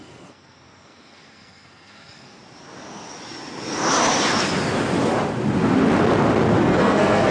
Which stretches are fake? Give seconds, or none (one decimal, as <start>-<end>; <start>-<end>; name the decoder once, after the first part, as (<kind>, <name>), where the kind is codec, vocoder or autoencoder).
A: 0.0-2.4 (codec, SNAC); 6.6-7.3